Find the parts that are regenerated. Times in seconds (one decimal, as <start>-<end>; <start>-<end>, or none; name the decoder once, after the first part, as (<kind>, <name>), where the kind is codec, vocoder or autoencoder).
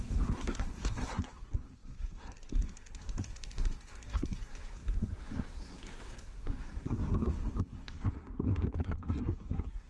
0.0-9.9 (codec, SNAC)